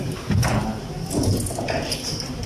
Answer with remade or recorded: recorded